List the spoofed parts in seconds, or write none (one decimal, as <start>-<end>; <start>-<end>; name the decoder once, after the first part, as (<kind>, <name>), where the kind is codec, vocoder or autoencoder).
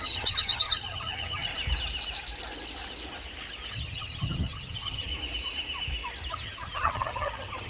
0.0-1.5 (vocoder, HiFi-GAN); 3.7-5.1; 6.3-7.7